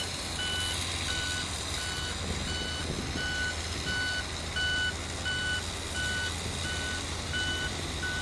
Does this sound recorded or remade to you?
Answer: recorded